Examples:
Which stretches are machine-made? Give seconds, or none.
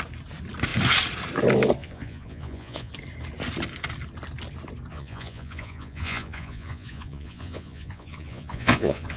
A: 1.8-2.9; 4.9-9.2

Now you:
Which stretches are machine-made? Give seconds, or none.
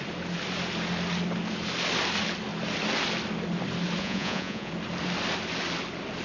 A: 4.0-4.7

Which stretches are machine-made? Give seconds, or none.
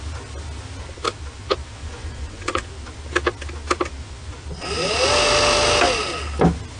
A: 1.8-2.7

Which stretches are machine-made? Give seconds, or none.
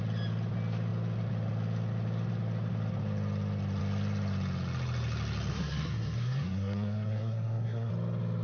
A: 5.5-7.9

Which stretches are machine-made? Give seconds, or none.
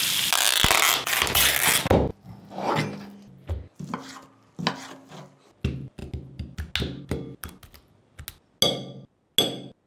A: none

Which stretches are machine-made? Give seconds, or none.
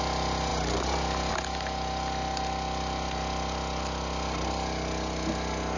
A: none